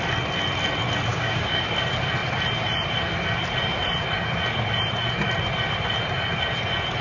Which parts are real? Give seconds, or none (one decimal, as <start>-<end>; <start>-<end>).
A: 0.0-1.1; 1.6-7.0